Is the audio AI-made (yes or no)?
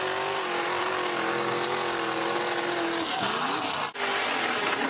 no